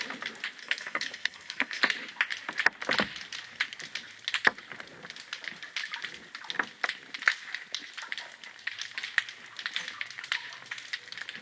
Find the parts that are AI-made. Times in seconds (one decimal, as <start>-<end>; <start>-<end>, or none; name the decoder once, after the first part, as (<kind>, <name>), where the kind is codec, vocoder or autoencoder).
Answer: 0.6-1.8 (codec, SNAC)